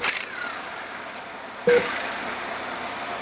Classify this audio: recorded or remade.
recorded